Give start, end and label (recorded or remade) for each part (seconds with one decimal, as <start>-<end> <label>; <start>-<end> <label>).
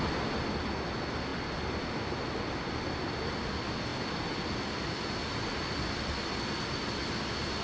0.0-7.6 recorded